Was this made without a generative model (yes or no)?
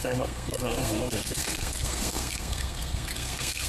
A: no